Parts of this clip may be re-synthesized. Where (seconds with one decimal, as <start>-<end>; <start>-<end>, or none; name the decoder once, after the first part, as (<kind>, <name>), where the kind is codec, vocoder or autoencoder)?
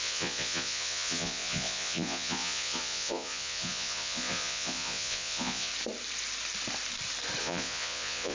0.0-5.7 (vocoder, Vocos); 7.4-8.3